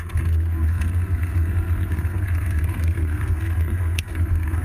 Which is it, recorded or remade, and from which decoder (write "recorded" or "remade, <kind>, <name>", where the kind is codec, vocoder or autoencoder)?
remade, codec, SNAC